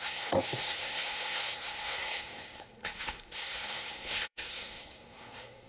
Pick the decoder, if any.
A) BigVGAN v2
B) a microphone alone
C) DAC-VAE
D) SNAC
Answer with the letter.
D